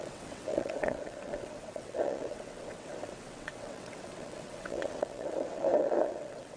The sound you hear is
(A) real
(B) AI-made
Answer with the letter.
B